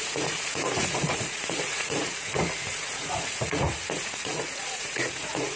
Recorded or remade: remade